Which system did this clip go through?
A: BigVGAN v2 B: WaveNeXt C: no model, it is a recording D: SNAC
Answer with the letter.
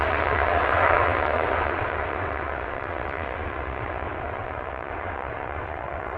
B